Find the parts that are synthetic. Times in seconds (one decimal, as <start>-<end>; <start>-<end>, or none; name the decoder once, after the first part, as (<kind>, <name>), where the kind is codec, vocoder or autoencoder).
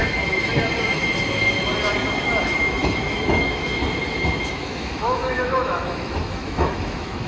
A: 0.0-0.5 (autoencoder, DAC-VAE); 2.4-3.8; 4.4-7.3